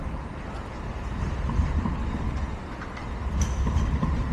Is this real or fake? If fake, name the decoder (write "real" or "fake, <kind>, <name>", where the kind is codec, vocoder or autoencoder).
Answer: real